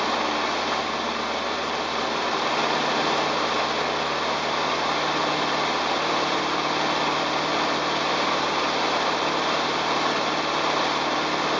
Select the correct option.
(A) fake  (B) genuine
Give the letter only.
B